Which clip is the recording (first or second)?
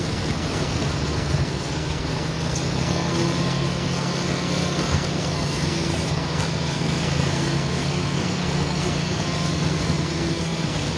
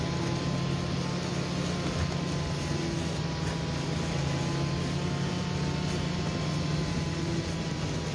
second